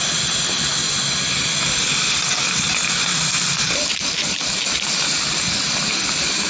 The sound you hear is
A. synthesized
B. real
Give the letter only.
B